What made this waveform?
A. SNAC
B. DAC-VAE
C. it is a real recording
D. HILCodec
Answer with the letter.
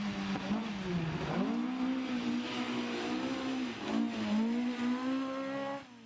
C